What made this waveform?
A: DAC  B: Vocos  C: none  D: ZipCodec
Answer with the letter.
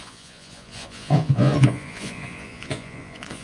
B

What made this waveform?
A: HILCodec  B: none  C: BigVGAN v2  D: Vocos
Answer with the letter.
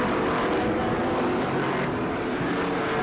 B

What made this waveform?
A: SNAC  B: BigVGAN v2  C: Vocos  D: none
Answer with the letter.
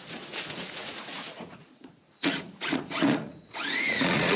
C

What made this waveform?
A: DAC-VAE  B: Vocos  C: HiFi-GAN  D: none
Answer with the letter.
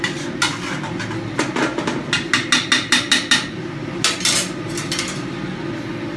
D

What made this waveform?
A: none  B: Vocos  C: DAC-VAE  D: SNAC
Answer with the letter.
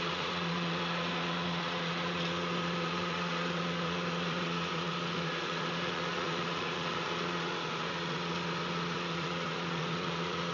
B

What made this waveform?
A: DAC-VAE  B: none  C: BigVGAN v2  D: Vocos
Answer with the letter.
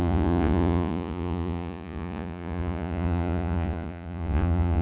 D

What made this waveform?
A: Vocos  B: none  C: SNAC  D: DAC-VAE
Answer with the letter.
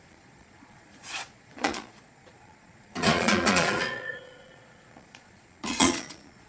A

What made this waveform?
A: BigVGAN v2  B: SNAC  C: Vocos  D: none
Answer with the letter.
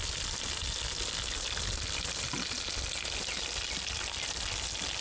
D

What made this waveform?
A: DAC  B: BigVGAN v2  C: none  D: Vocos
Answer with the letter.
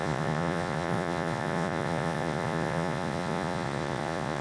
D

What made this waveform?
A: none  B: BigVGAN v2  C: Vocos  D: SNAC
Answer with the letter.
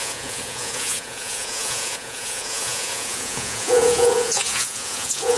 C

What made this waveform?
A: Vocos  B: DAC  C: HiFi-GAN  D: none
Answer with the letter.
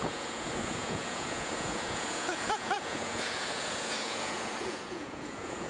A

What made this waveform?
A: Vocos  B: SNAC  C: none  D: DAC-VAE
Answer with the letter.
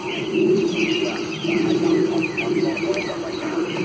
C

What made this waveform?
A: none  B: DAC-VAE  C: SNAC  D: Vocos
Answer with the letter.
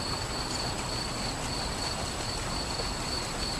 A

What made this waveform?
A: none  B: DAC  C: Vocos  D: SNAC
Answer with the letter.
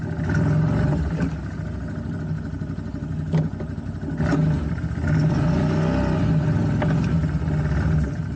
A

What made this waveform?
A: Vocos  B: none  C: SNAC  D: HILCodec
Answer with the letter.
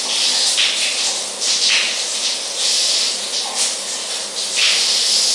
B